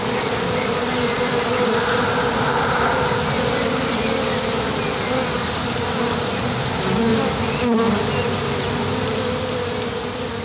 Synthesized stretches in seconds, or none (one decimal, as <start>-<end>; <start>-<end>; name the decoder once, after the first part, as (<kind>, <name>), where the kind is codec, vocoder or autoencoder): none